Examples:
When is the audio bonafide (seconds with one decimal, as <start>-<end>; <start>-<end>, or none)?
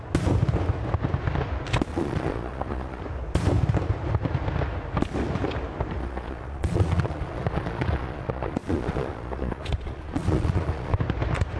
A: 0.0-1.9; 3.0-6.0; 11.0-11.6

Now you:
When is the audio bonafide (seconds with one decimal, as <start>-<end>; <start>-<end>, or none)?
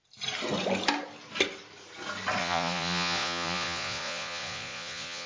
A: 0.0-2.4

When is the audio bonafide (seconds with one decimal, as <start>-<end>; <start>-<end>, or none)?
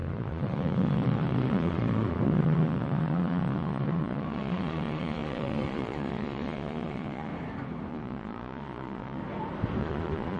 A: 7.3-7.9; 9.2-9.8